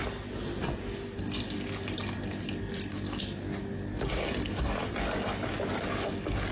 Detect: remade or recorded recorded